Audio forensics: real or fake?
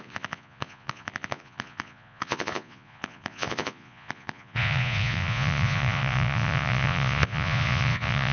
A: fake